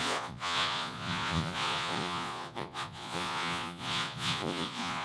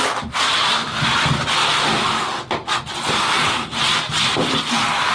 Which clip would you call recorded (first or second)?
second